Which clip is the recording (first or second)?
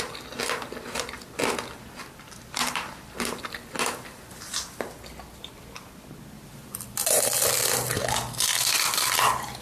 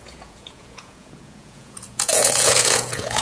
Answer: first